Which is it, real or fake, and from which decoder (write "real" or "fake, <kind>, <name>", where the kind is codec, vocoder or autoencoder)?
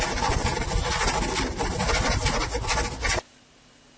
real